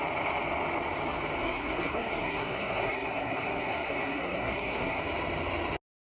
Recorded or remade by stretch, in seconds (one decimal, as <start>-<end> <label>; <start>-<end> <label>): 0.0-1.4 recorded; 1.4-5.0 remade; 5.0-6.0 recorded